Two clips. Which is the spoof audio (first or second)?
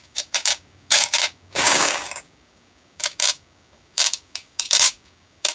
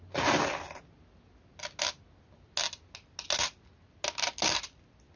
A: first